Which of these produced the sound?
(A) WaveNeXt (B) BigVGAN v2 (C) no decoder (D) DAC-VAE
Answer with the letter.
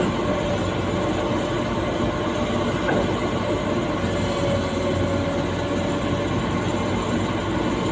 C